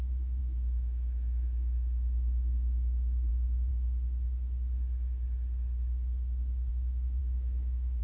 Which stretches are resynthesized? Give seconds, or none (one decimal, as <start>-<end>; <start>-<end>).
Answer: 0.0-3.7; 6.7-8.0

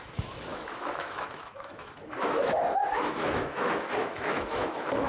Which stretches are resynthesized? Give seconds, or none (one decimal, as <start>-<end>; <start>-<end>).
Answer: 0.0-5.1